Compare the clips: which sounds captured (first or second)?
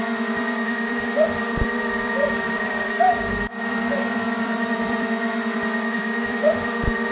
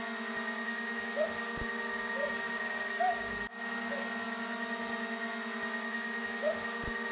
second